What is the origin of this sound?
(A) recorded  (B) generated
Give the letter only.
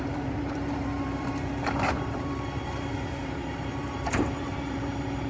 B